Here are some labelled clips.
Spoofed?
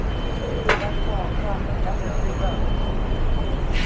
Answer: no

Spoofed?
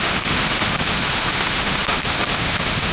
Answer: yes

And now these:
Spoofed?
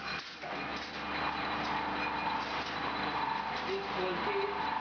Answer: no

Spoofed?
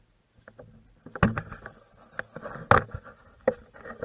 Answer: no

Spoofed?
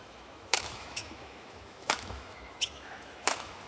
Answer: yes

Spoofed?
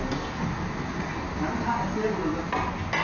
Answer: no